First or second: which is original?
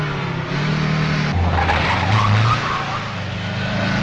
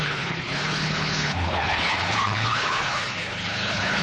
first